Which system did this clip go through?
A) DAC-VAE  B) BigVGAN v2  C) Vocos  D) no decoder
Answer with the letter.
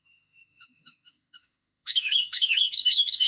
A